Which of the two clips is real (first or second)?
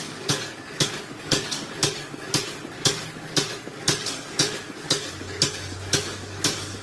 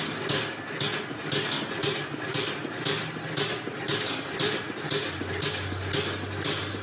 second